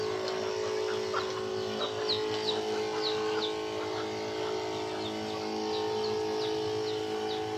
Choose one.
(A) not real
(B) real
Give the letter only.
B